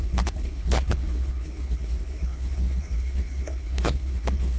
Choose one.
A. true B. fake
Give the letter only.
B